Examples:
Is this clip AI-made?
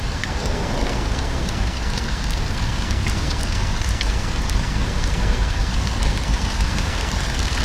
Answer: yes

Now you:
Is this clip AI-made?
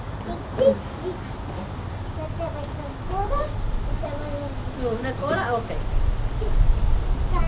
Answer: no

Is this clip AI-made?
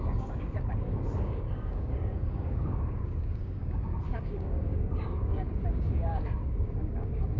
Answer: yes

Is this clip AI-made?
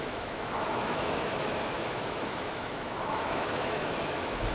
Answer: yes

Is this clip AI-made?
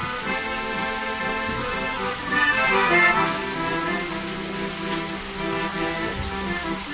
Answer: no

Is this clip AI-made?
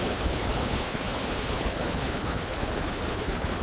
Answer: yes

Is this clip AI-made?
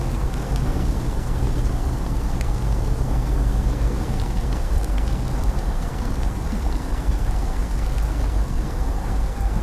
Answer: yes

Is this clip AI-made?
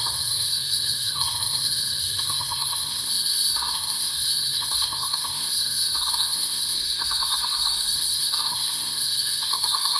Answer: yes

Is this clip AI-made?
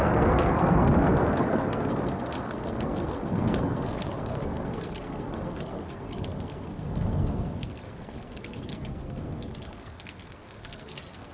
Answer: yes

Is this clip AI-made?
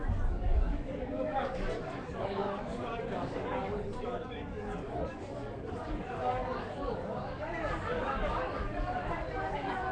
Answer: yes